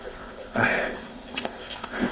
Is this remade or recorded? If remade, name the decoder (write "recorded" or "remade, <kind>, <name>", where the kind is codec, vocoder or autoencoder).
remade, codec, ZipCodec